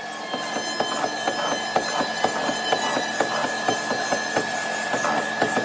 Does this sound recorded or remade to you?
recorded